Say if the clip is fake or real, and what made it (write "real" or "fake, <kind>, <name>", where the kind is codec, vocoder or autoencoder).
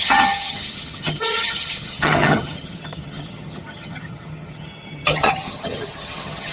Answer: fake, vocoder, HiFi-GAN